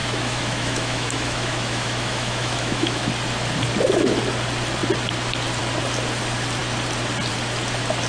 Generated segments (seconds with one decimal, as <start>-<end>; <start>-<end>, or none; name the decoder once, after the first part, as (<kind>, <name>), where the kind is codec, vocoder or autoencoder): 0.0-3.1 (autoencoder, DAC-VAE)